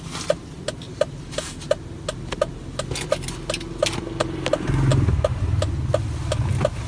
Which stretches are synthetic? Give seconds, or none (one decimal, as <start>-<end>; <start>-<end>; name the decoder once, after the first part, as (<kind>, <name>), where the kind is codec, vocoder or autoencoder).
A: none